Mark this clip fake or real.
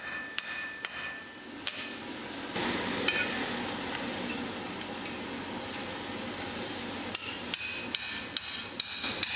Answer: real